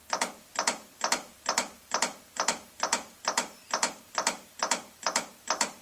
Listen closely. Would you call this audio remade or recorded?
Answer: remade